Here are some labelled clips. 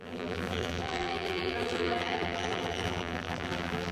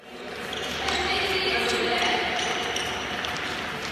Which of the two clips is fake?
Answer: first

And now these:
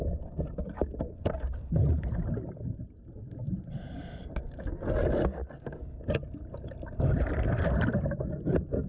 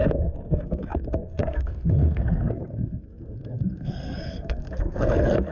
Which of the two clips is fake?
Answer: second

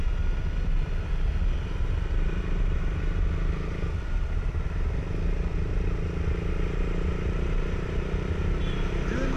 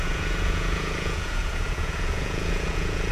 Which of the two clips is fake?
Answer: second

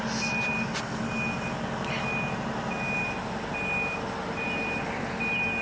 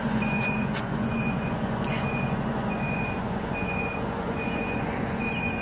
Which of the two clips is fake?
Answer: second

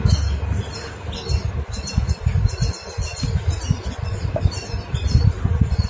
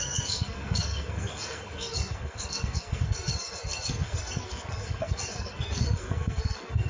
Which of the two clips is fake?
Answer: second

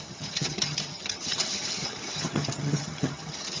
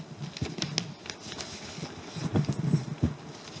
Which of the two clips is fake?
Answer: first